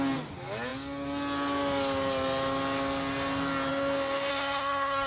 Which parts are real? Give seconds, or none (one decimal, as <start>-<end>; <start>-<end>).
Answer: 0.0-4.3